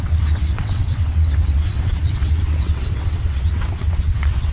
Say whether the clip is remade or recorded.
remade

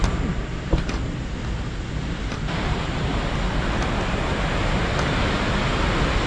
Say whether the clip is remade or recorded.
recorded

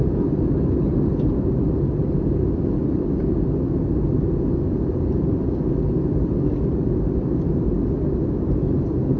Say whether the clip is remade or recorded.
recorded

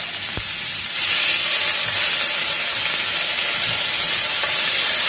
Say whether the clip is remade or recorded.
recorded